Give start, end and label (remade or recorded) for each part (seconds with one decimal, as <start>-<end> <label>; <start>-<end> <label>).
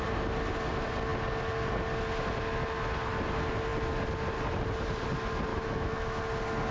0.0-5.5 recorded; 5.5-6.2 remade; 6.2-6.7 recorded